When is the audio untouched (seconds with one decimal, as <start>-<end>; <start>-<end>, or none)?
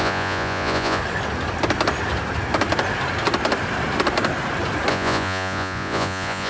1.0-4.9